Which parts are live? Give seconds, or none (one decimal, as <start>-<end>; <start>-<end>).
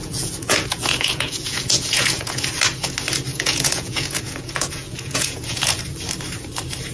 2.5-3.3; 5.8-6.9